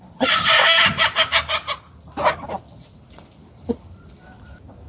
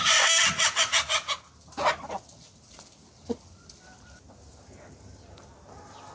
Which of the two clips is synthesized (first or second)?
first